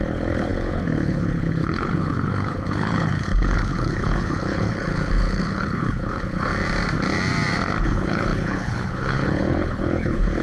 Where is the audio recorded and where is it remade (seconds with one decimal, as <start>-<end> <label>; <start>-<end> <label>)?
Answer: 0.0-6.5 remade; 6.5-7.8 recorded; 7.8-10.4 remade